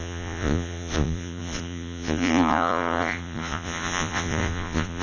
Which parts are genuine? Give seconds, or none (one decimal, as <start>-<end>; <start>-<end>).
none